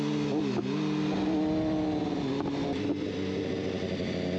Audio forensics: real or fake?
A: real